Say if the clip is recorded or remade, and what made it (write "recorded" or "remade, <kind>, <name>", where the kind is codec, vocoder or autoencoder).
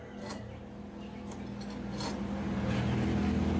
recorded